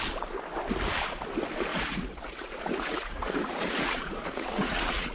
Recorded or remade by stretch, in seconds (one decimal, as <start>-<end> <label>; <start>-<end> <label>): 0.0-1.7 recorded; 1.7-5.1 remade